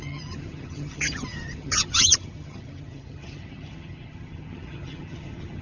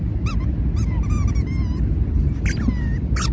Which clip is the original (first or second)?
second